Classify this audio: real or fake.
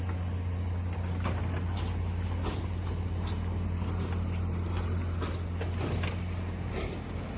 real